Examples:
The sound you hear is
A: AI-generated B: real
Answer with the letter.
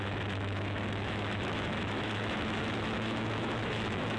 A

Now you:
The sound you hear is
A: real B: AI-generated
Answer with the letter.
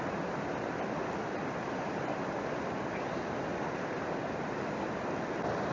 A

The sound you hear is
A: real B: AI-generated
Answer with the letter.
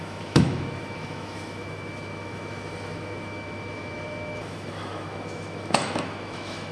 B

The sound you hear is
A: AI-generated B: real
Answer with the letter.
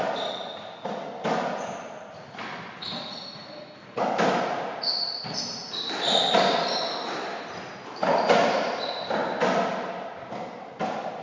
B